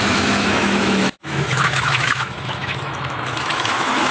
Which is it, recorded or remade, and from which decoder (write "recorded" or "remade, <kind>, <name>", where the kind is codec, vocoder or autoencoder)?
remade, autoencoder, DAC-VAE